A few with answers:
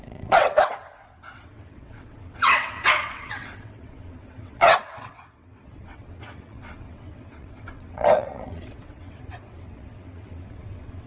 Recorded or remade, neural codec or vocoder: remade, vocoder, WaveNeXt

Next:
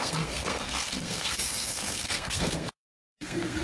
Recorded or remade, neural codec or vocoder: remade, codec, SNAC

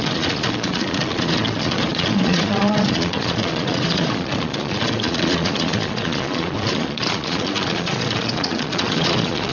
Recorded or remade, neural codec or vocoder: remade, vocoder, Vocos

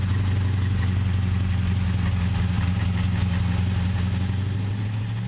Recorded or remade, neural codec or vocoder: recorded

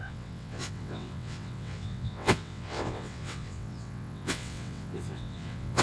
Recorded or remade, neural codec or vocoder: remade, vocoder, WaveNeXt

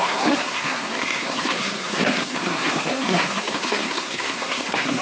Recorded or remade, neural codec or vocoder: remade, codec, SNAC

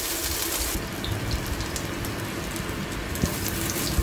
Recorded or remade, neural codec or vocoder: recorded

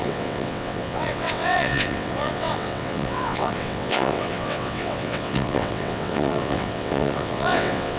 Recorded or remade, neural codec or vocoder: remade, vocoder, WaveNeXt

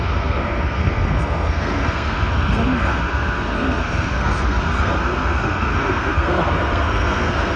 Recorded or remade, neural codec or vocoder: remade, codec, SNAC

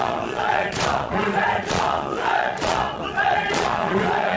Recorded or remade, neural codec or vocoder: remade, vocoder, Vocos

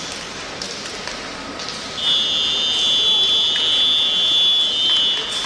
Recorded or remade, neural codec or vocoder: recorded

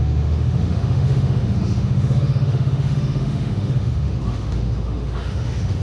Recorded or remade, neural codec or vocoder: remade, autoencoder, DAC-VAE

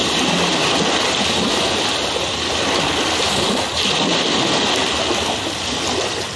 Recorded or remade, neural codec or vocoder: recorded